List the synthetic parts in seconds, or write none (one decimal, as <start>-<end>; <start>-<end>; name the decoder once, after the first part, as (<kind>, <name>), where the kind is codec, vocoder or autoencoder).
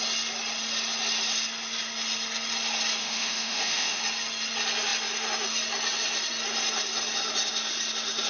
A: 3.0-4.0 (autoencoder, DAC-VAE)